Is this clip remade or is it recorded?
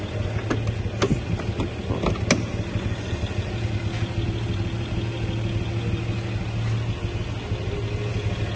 recorded